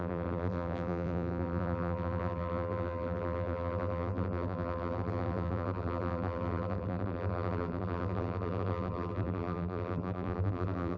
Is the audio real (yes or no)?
no